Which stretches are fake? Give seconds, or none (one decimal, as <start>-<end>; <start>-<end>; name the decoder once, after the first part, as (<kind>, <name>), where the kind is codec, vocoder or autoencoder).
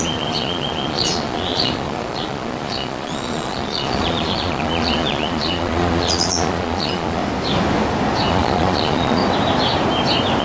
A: 0.0-7.2 (vocoder, Vocos); 8.3-9.2